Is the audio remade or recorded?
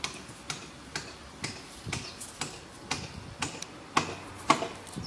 recorded